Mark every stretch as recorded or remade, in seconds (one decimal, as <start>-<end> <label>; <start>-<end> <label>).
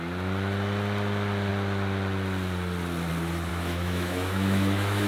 0.0-3.5 recorded; 3.5-5.1 remade